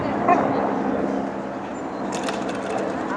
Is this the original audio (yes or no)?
yes